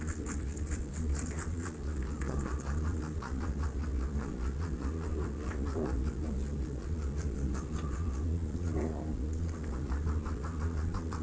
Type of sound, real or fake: fake